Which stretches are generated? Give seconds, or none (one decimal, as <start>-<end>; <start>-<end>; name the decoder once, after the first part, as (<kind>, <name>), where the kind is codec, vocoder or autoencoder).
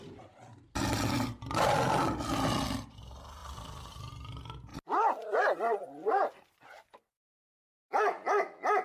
none